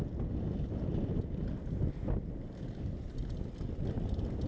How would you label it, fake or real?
real